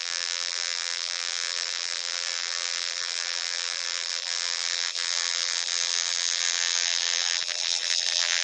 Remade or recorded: remade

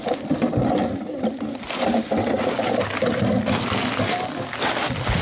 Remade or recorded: recorded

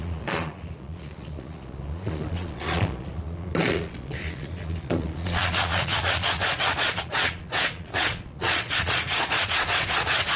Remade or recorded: remade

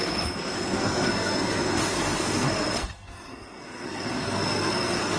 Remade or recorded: remade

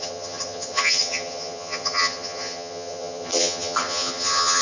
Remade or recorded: remade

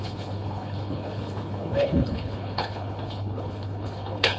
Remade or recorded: remade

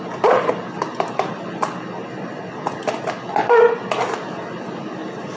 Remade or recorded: recorded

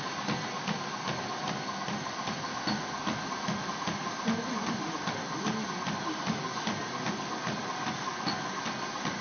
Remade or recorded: recorded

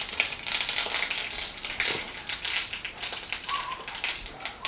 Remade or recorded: recorded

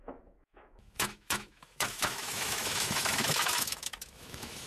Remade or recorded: remade